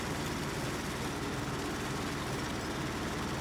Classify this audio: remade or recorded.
recorded